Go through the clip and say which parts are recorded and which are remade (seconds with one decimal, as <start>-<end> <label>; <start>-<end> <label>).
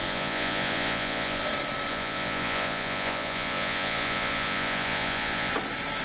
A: 0.0-1.4 remade; 1.4-1.9 recorded; 1.9-5.5 remade; 5.5-6.0 recorded